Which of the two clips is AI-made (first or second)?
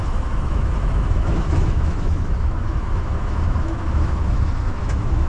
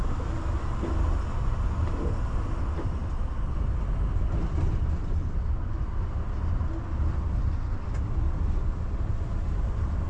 first